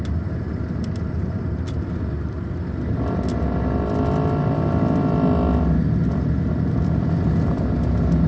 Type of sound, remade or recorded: recorded